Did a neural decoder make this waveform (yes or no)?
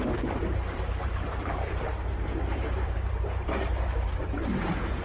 yes